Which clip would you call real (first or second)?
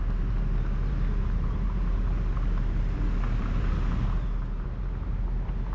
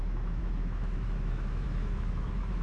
first